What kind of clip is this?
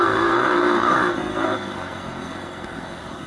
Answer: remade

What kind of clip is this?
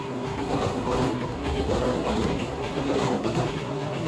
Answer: remade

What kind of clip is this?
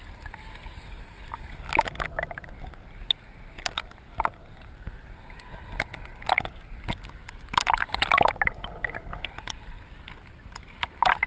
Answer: recorded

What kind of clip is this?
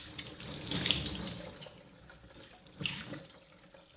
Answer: recorded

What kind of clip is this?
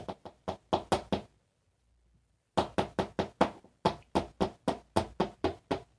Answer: recorded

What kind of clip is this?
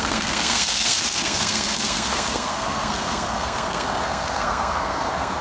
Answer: remade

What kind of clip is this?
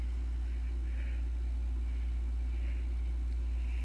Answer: recorded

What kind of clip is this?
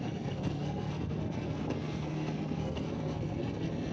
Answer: remade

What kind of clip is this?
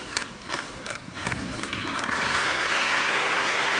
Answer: remade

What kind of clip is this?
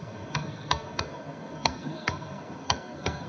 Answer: remade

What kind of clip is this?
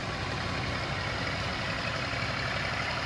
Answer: recorded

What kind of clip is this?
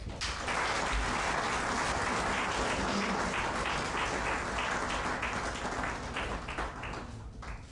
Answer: recorded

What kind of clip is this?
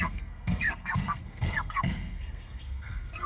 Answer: remade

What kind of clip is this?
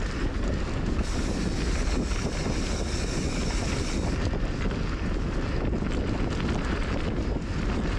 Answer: recorded